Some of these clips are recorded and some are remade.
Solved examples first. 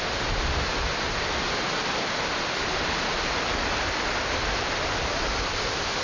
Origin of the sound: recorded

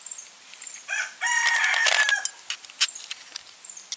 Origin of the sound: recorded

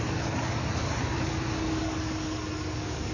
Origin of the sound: remade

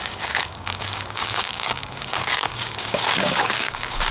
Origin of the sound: remade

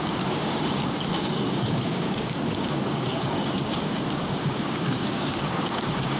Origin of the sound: remade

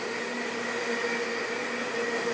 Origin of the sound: recorded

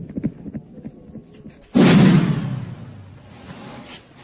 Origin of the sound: recorded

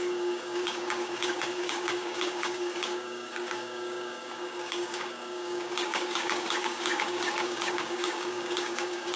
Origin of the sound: remade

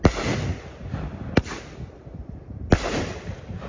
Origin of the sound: recorded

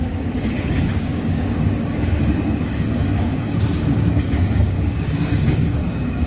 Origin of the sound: remade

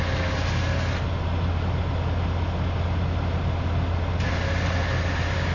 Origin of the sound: recorded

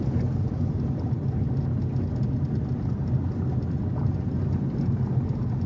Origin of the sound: recorded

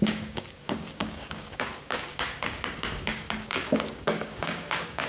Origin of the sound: remade